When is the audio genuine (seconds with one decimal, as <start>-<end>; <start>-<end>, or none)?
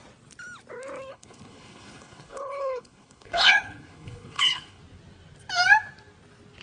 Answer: 0.0-1.1; 4.8-6.6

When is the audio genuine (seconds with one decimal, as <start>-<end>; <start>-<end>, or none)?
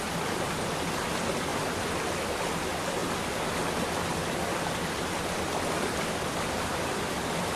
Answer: 0.0-1.5; 2.6-7.6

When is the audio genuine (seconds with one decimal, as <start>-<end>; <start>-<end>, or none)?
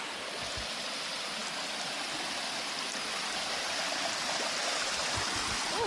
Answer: 0.0-5.9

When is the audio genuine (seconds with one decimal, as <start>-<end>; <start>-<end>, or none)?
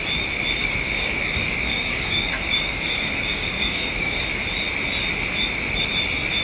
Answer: 0.0-0.6; 4.4-6.4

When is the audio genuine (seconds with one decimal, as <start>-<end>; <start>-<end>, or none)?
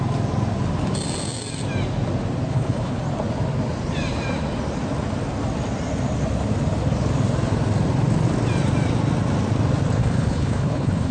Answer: 0.0-2.5; 3.0-10.0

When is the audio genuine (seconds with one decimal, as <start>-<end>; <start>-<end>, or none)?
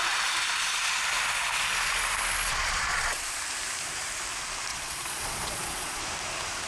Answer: 0.0-2.5; 3.4-4.7; 6.0-6.7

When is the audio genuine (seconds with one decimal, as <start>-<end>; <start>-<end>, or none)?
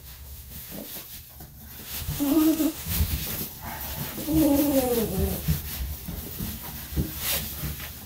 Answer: 0.9-1.8; 3.2-8.1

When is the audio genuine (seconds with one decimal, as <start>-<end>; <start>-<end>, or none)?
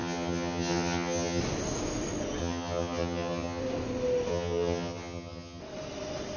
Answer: 1.4-2.4; 3.6-4.3; 5.6-6.4